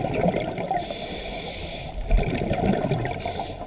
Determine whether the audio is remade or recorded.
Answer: recorded